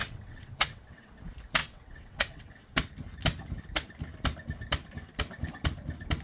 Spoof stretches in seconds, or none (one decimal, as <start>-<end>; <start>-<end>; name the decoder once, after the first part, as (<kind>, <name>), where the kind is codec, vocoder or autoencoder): 0.0-1.1 (vocoder, WaveNeXt); 1.6-2.9